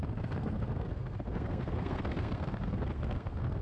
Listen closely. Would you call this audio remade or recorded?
remade